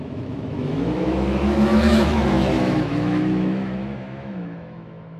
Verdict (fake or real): fake